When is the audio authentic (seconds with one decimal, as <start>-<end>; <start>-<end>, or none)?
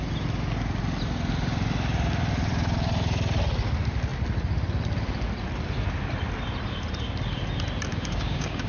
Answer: 0.0-7.9